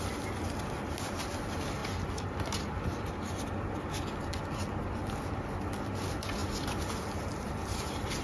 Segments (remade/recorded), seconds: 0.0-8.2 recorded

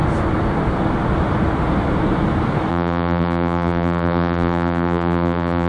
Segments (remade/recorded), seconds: 0.0-2.7 recorded; 2.7-5.7 remade

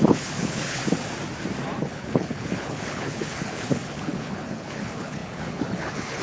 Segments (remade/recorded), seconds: 0.0-0.8 remade; 0.8-1.8 recorded; 1.8-6.2 remade

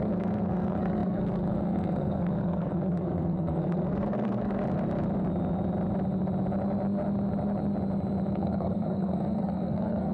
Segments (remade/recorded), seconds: 0.0-4.6 remade; 4.6-8.3 recorded; 8.3-10.1 remade